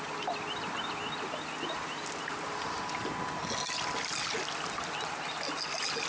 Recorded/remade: recorded